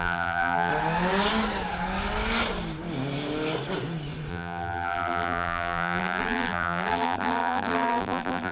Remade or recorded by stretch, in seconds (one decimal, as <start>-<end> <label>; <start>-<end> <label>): 0.0-0.7 remade; 0.7-4.3 recorded; 4.3-8.5 remade